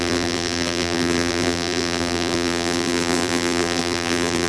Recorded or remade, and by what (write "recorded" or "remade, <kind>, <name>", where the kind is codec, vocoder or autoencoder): remade, vocoder, BigVGAN v2